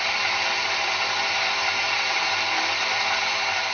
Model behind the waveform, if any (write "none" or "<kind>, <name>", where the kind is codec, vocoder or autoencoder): none